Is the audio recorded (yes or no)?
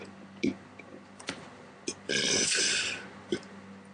yes